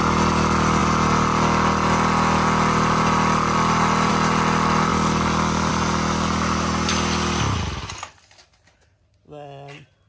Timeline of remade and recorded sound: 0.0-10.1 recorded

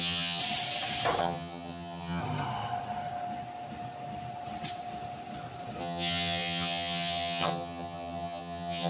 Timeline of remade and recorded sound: 0.0-0.4 remade; 0.4-1.2 recorded; 1.2-2.2 remade; 2.2-5.8 recorded; 5.8-8.9 remade

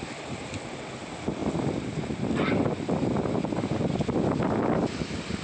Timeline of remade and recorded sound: 0.0-5.4 recorded

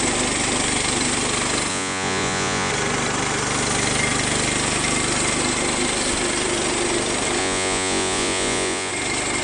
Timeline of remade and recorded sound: 0.0-1.7 recorded; 1.7-2.7 remade; 2.7-7.4 recorded; 7.4-8.9 remade; 8.9-9.4 recorded

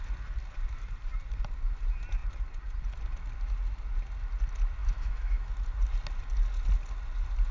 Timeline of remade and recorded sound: 0.0-4.8 recorded; 4.8-5.5 remade; 5.5-7.5 recorded

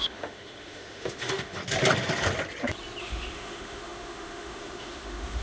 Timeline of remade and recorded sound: 0.0-1.6 remade; 1.6-3.0 recorded; 3.0-5.4 remade

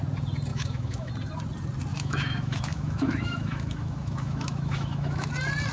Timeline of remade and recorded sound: 0.0-0.5 recorded; 0.5-1.1 remade; 1.1-1.9 recorded; 1.9-5.3 remade; 5.3-5.7 recorded